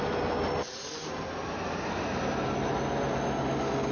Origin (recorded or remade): recorded